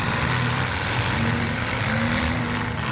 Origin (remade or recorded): recorded